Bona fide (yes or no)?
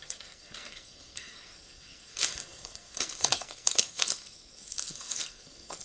no